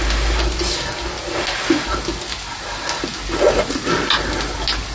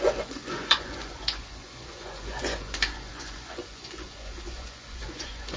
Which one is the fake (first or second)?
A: second